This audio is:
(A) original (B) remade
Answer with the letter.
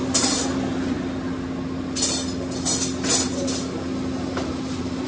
A